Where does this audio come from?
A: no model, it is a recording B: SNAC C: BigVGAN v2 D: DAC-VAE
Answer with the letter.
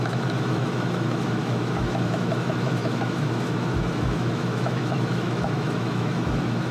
D